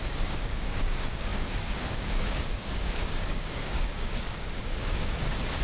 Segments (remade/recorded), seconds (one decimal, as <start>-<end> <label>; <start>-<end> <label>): 0.0-5.6 remade

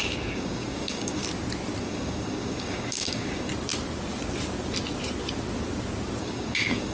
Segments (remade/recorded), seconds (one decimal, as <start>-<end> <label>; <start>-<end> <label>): 0.0-1.2 remade; 1.2-1.8 recorded; 1.8-3.5 remade; 3.5-6.2 recorded; 6.2-6.9 remade

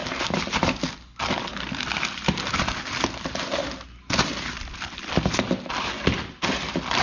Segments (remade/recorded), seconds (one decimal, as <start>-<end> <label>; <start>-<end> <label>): 0.0-7.0 recorded

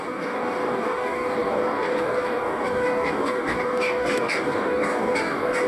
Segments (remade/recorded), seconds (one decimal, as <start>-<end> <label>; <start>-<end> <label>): 0.0-5.7 remade